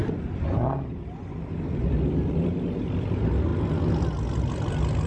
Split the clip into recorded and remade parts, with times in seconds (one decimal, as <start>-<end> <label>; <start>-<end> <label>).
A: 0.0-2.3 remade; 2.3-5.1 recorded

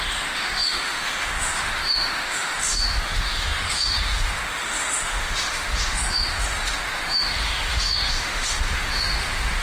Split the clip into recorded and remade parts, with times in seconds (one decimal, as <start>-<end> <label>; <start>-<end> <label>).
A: 0.0-9.6 remade

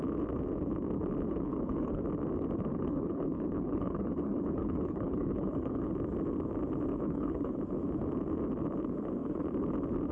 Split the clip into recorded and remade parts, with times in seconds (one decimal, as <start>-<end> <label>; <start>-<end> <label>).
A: 0.0-1.3 recorded; 1.3-2.0 remade; 2.0-2.7 recorded; 2.7-5.9 remade; 5.9-6.9 recorded; 6.9-7.6 remade; 7.6-10.1 recorded